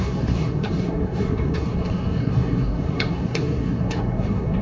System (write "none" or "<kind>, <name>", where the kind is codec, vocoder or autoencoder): codec, SNAC